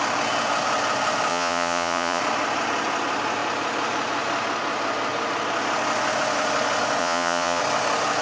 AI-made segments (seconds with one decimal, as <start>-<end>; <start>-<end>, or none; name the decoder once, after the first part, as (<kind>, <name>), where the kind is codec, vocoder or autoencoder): 1.3-2.2 (vocoder, Vocos); 7.0-7.6